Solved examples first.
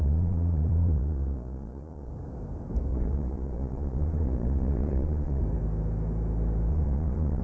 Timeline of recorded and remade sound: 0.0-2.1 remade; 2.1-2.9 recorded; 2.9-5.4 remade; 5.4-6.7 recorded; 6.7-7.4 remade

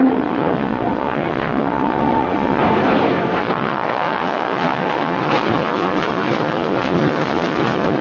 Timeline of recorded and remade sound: 0.0-2.6 remade; 2.6-3.4 recorded; 3.4-8.0 remade

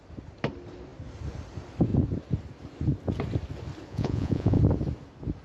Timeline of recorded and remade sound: 0.0-3.9 recorded; 3.9-4.6 remade; 4.6-5.4 recorded

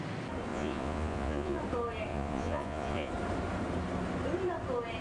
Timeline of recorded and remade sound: 0.0-0.5 recorded; 0.5-1.6 remade; 1.6-2.1 recorded; 2.1-3.1 remade; 3.1-5.0 recorded

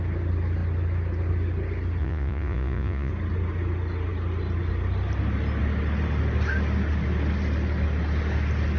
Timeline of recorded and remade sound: 0.0-2.0 recorded; 2.0-3.1 remade; 3.1-8.8 recorded

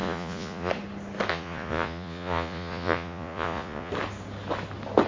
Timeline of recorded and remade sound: 0.0-0.7 remade; 0.7-1.3 recorded; 1.3-3.9 remade; 3.9-5.1 recorded

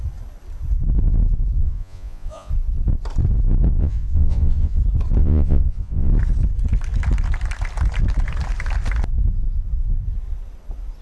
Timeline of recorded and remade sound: 0.0-1.6 recorded; 1.6-2.5 remade; 2.5-3.8 recorded; 3.8-4.8 remade; 4.8-5.2 recorded; 5.2-6.1 remade; 6.1-11.0 recorded